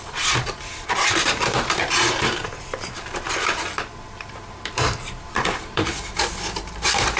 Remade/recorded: remade